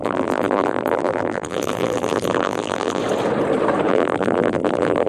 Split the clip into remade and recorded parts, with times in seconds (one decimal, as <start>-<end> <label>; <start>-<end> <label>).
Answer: 0.0-3.0 remade; 3.0-3.9 recorded; 3.9-5.1 remade